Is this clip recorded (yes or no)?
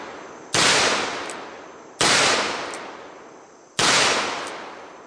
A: yes